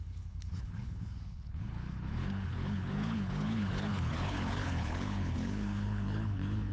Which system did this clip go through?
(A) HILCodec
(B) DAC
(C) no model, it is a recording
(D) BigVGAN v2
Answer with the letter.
A